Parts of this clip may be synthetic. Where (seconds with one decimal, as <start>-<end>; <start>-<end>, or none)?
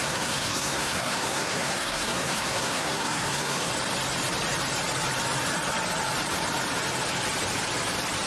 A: 0.0-3.7